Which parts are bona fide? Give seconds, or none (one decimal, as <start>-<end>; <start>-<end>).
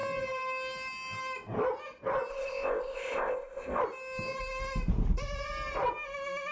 0.0-2.3; 3.8-6.5